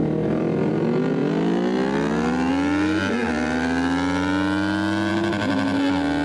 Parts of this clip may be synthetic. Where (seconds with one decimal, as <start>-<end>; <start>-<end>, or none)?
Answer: none